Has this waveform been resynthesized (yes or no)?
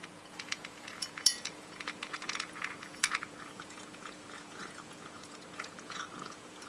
yes